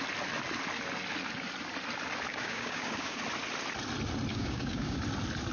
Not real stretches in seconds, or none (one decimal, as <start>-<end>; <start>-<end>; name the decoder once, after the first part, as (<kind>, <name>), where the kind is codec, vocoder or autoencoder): 2.3-3.2 (codec, DAC); 4.3-5.0